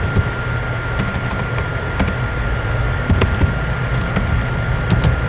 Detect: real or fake real